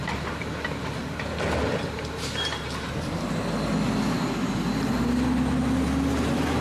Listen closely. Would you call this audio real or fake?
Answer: real